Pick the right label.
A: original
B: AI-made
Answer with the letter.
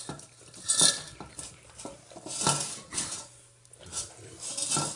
A